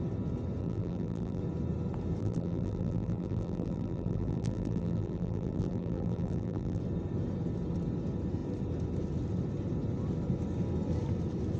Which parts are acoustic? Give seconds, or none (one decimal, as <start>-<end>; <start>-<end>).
0.0-0.6; 1.4-2.2; 6.8-11.6